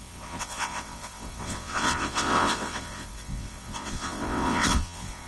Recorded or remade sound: remade